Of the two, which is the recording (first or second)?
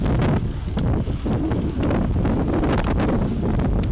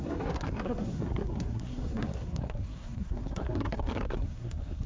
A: first